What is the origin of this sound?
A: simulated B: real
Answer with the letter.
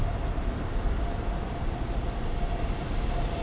B